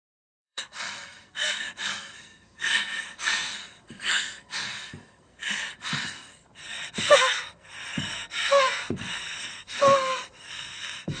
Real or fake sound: fake